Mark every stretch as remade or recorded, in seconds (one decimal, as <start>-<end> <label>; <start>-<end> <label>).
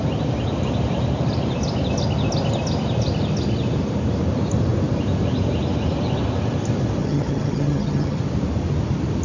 0.0-7.0 recorded; 7.0-8.2 remade; 8.2-9.2 recorded